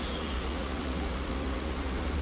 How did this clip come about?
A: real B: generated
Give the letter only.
B